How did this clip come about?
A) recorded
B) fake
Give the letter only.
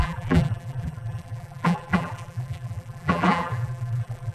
B